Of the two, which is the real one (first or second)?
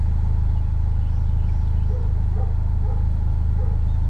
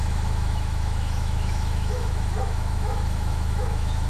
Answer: first